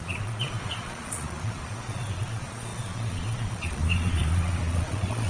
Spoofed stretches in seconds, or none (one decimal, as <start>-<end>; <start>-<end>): 0.0-5.3